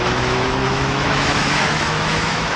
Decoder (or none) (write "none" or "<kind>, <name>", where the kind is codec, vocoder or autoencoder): autoencoder, DAC-VAE